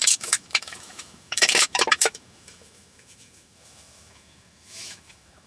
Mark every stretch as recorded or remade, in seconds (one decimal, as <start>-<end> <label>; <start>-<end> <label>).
0.0-5.5 remade